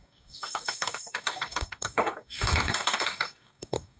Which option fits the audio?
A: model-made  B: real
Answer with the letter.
A